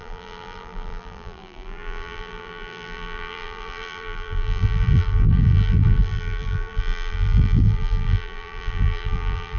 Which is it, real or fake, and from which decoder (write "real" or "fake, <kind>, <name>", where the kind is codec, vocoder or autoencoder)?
fake, vocoder, BigVGAN v2